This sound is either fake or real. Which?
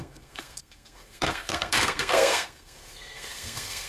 fake